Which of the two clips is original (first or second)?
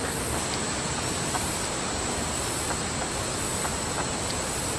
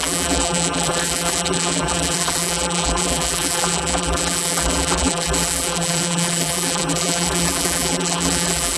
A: first